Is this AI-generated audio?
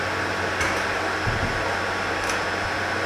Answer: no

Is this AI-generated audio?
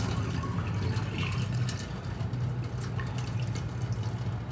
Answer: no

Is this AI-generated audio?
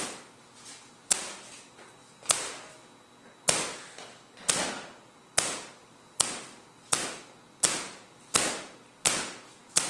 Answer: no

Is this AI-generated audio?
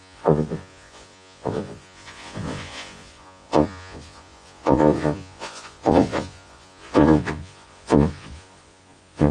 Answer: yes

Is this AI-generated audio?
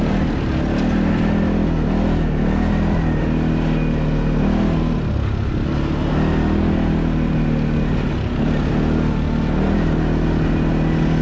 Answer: no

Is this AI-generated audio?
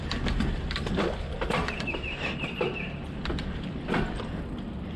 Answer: no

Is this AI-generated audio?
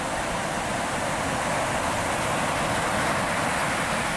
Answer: no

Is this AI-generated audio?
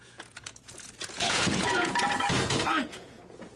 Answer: yes